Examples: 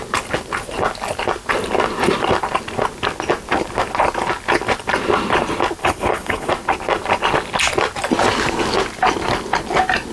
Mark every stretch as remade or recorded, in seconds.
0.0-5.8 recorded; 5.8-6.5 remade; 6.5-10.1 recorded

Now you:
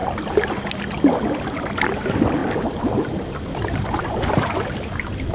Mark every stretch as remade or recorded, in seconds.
0.0-5.3 recorded

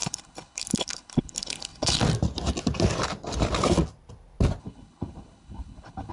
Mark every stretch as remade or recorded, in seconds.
0.0-2.0 remade; 2.0-4.6 recorded; 4.6-6.1 remade

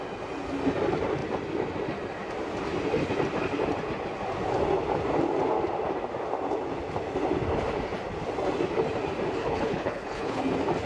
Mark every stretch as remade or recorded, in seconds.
0.0-9.4 recorded; 9.4-10.4 remade; 10.4-10.9 recorded

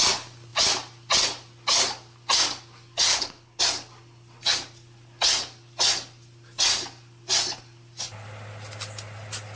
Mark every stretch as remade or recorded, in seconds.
0.0-3.1 recorded; 3.1-3.6 remade; 3.6-9.6 recorded

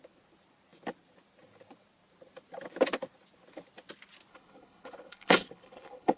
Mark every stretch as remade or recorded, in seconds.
0.0-4.3 recorded; 4.3-6.2 remade

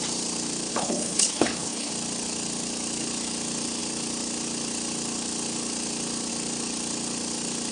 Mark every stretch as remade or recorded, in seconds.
0.0-0.7 recorded; 0.7-1.9 remade; 1.9-7.7 recorded